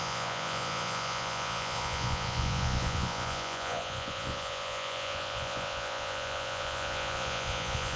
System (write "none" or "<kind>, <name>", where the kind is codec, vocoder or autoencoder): vocoder, Vocos